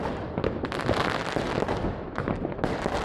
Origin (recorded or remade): recorded